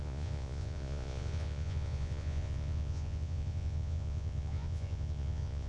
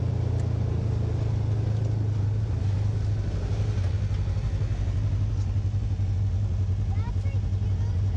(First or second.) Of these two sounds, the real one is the second